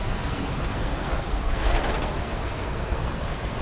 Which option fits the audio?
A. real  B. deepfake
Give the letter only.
B